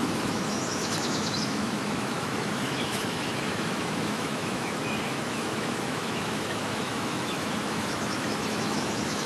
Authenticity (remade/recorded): remade